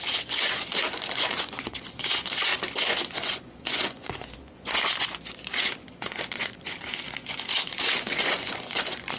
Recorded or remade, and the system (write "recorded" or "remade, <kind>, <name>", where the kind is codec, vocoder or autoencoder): remade, vocoder, Vocos